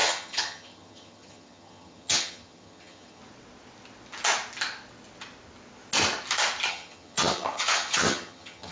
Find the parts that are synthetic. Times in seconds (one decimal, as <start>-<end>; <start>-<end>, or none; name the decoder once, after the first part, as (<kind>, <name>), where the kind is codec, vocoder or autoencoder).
0.0-3.2 (vocoder, HiFi-GAN); 6.7-8.7